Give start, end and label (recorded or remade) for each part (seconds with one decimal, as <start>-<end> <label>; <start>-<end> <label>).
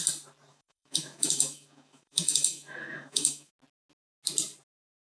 0.0-0.5 recorded; 0.5-3.5 remade; 3.5-5.0 recorded